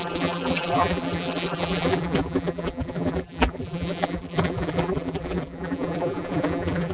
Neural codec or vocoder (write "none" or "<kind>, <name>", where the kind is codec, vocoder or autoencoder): vocoder, BigVGAN v2